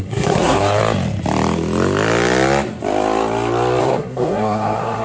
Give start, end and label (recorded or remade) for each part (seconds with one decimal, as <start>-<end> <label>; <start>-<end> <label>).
0.0-0.8 remade; 0.8-3.8 recorded; 3.8-5.0 remade